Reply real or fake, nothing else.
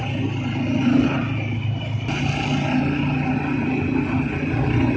real